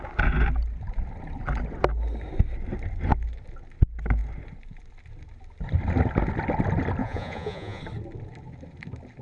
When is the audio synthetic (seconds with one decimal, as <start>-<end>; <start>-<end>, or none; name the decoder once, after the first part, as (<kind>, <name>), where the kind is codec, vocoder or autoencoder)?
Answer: 7.0-7.8 (vocoder, Vocos)